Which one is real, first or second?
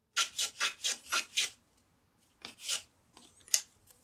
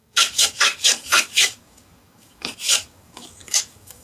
first